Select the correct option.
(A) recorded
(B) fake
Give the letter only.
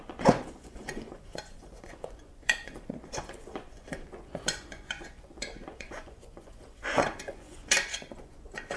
B